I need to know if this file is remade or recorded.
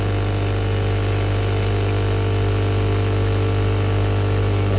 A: recorded